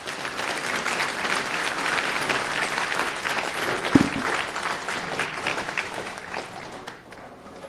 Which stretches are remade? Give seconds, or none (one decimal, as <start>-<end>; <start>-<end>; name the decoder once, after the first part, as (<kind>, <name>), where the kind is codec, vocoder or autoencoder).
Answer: 5.5-6.2 (autoencoder, DAC-VAE)